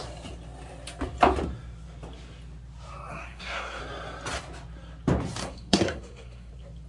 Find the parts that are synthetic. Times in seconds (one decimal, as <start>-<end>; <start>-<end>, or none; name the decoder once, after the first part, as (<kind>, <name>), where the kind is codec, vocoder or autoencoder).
3.1-3.8 (codec, SNAC); 5.4-6.5